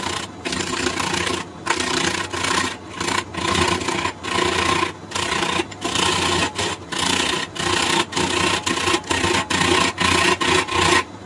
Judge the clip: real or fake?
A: real